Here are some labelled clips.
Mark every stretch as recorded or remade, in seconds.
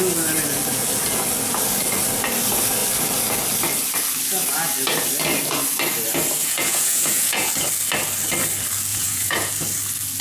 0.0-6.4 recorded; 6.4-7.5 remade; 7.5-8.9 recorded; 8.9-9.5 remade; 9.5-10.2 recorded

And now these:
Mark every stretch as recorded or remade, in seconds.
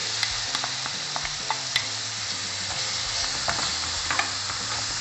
0.0-5.0 recorded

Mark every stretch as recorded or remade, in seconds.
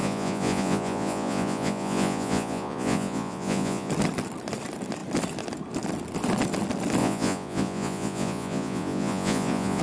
0.0-3.9 remade; 3.9-7.0 recorded; 7.0-9.8 remade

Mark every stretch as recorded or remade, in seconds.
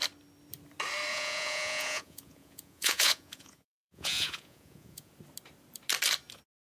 0.0-1.1 recorded; 1.1-5.1 remade; 5.1-6.7 recorded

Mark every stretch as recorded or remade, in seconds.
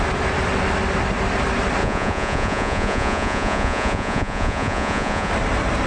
0.0-1.8 recorded; 1.8-5.3 remade; 5.3-5.9 recorded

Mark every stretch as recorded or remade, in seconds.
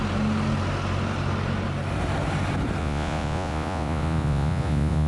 0.0-2.8 recorded; 2.8-5.1 remade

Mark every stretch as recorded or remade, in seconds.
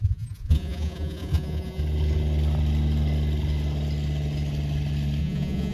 0.0-1.8 remade; 1.8-5.2 recorded; 5.2-5.7 remade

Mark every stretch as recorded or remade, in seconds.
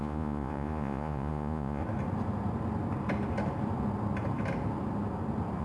0.0-1.8 remade; 1.8-5.6 recorded